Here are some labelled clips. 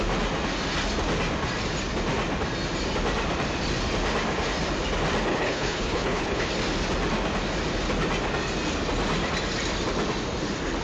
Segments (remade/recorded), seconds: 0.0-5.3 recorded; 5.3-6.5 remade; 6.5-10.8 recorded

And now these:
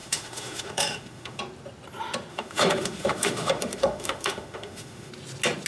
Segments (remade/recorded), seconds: 0.0-1.4 remade; 1.4-2.3 recorded; 2.3-5.1 remade; 5.1-5.7 recorded

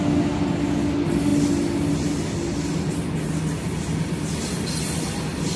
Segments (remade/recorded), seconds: 0.0-5.6 recorded

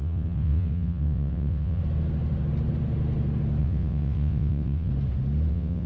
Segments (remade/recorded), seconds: 0.0-1.8 remade; 1.8-3.6 recorded; 3.6-4.9 remade; 4.9-5.5 recorded; 5.5-5.9 remade

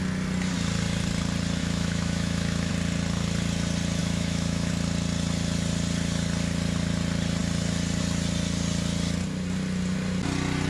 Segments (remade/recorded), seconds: 0.0-1.6 recorded; 1.6-2.7 remade; 2.7-4.0 recorded; 4.0-4.7 remade; 4.7-10.7 recorded